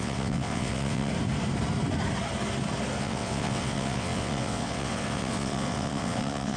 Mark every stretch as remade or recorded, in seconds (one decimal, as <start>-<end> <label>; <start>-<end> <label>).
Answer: 0.0-1.1 remade; 1.1-3.0 recorded; 3.0-6.6 remade